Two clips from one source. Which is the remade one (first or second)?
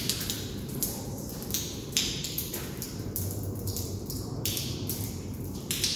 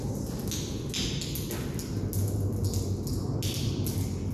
first